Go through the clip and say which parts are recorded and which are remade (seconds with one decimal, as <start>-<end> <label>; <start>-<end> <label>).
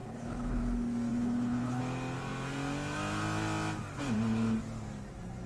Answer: 0.0-0.6 remade; 0.6-1.1 recorded; 1.1-1.8 remade; 1.8-5.5 recorded